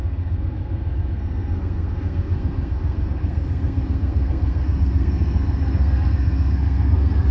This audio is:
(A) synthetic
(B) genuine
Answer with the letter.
A